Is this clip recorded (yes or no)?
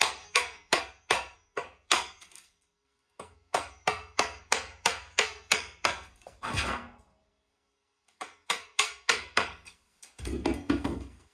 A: no